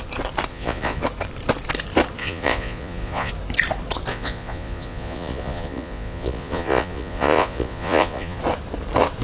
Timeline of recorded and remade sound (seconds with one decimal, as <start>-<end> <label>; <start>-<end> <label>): 0.0-0.5 recorded; 0.5-1.0 remade; 1.0-2.2 recorded; 2.2-3.3 remade; 3.3-4.1 recorded; 4.1-8.4 remade; 8.4-9.2 recorded